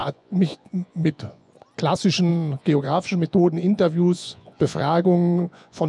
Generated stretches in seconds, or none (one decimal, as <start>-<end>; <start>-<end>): 0.0-1.5; 2.3-5.9